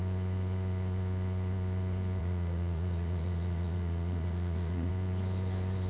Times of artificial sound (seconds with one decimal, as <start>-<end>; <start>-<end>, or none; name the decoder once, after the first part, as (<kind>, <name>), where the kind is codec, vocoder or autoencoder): 2.2-4.9 (vocoder, Vocos)